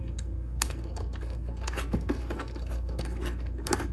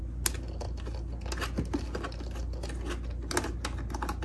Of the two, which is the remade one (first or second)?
first